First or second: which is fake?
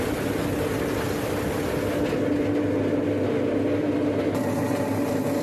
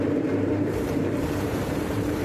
second